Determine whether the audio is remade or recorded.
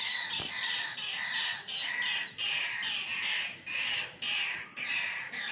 recorded